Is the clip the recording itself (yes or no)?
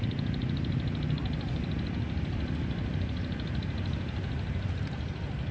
yes